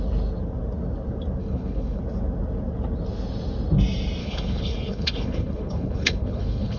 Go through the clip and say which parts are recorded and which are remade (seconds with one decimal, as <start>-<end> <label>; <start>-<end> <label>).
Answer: 0.0-1.4 recorded; 1.4-2.0 remade; 2.0-4.2 recorded; 4.2-6.8 remade